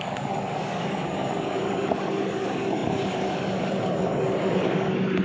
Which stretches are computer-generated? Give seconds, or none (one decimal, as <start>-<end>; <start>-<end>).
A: 0.0-5.2